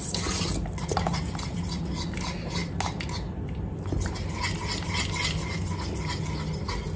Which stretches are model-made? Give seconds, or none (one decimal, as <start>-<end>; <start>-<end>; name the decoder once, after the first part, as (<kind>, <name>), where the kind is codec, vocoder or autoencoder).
none